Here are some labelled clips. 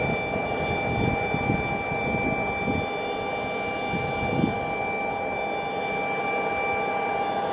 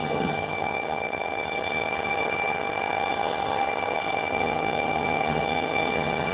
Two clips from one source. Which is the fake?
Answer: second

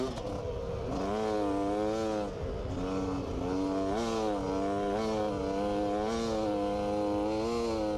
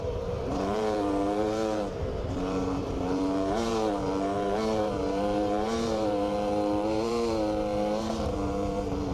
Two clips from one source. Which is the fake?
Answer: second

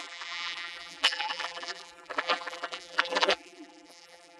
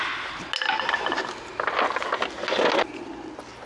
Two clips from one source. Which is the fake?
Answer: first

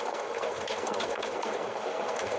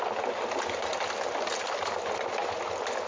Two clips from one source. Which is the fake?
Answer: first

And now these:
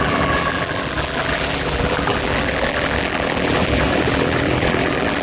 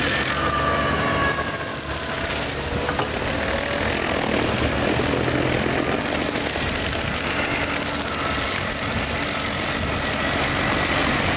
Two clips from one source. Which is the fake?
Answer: first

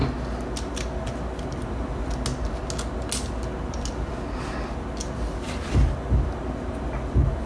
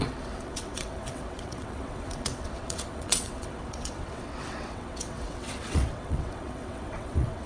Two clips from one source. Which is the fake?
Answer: second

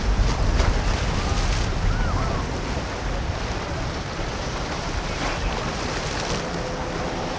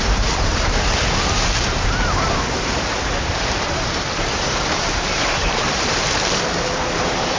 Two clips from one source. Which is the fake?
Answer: second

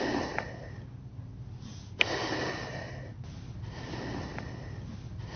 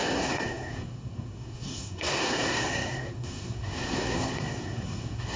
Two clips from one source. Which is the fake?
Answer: second